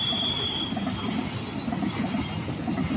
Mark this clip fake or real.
real